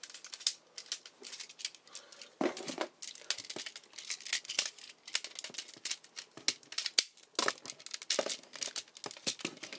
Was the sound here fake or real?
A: real